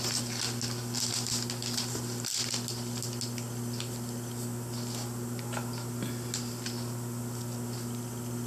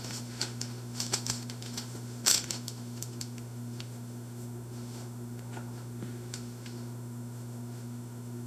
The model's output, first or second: second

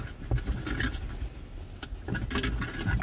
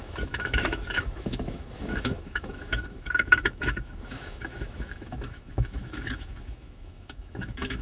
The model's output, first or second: second